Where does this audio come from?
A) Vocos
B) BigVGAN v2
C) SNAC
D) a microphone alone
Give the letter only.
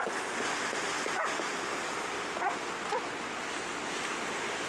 D